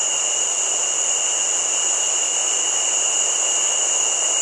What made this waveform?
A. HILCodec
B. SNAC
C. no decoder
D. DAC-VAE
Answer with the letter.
C